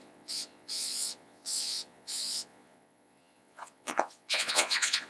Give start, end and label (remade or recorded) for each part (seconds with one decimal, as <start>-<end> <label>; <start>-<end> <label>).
0.0-5.1 remade